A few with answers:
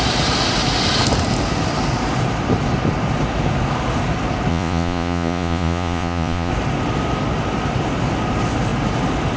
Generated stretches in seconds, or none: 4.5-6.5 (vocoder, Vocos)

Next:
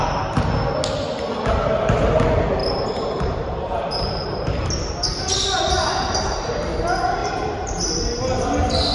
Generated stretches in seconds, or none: 2.6-4.9 (vocoder, BigVGAN v2); 7.2-7.9

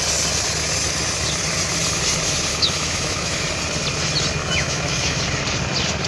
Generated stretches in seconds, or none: 2.5-3.4 (autoencoder, DAC-VAE); 4.4-5.2

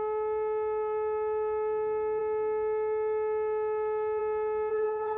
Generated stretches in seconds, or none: 4.7-5.2 (vocoder, HiFi-GAN)